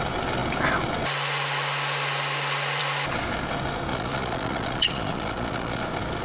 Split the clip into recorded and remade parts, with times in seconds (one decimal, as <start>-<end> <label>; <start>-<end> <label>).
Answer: 0.0-3.9 recorded; 3.9-5.8 remade; 5.8-6.2 recorded